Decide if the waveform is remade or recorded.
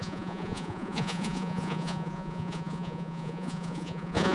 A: remade